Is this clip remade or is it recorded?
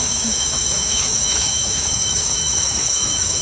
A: remade